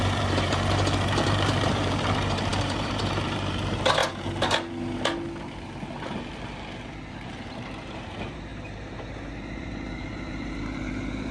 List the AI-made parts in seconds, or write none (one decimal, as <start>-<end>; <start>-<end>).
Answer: 0.0-4.0; 7.1-11.3